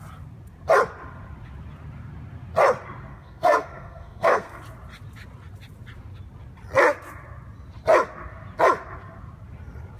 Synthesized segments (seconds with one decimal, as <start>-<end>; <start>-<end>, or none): 3.1-4.6